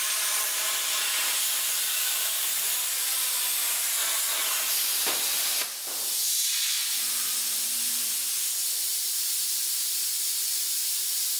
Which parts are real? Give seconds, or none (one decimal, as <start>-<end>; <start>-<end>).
0.0-1.9; 2.5-11.4